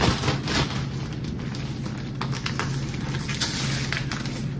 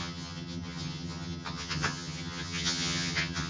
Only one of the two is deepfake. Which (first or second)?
second